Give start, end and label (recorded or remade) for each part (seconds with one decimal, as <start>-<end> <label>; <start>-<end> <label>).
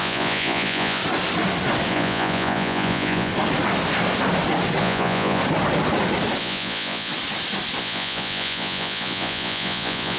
0.0-1.0 remade; 1.0-1.9 recorded; 1.9-3.3 remade; 3.3-4.8 recorded; 4.8-5.4 remade; 5.4-6.4 recorded; 6.4-7.1 remade; 7.1-7.8 recorded; 7.8-10.2 remade